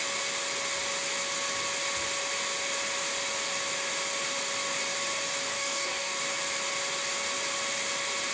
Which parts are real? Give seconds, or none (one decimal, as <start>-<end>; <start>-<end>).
0.0-5.5; 6.2-8.3